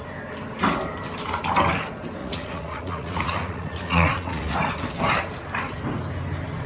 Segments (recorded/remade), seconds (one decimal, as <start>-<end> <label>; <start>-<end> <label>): 0.0-2.2 recorded; 2.2-4.7 remade; 4.7-6.7 recorded